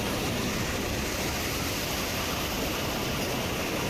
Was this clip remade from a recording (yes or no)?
no